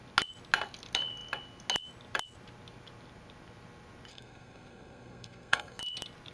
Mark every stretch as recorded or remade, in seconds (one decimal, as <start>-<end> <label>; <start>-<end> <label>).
0.0-4.1 recorded; 4.1-5.8 remade; 5.8-6.3 recorded